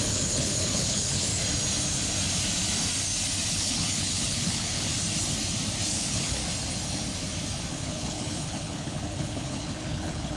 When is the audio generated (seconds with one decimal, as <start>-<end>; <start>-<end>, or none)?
0.0-1.3; 3.5-4.9; 5.9-6.4; 7.7-10.4